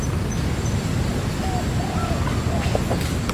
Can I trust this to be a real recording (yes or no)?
yes